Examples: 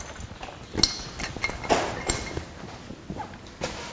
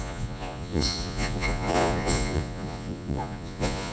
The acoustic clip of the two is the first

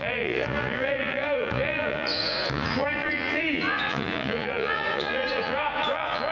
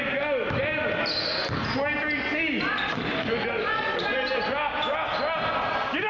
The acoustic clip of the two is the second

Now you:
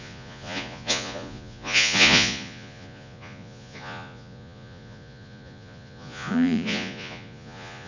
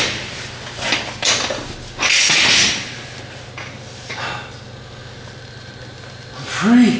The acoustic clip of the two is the second